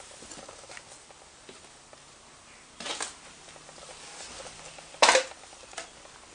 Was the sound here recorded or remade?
recorded